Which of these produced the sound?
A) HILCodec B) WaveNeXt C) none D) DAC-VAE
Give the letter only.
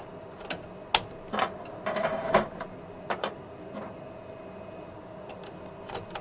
C